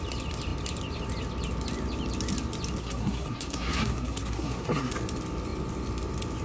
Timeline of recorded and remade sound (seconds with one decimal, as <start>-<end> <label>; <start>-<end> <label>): 0.0-2.8 recorded; 2.8-4.9 remade; 4.9-6.4 recorded